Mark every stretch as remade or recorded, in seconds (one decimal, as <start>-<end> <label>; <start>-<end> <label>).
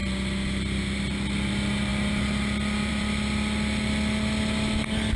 0.0-5.2 recorded